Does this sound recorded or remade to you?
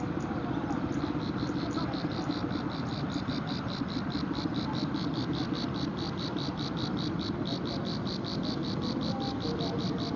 recorded